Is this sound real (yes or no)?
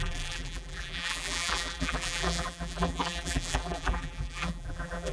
no